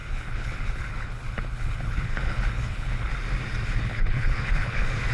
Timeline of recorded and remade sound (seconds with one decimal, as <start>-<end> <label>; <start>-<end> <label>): 0.0-3.1 remade; 3.1-3.8 recorded; 3.8-5.1 remade